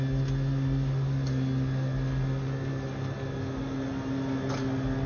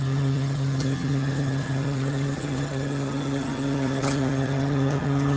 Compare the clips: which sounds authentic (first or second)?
first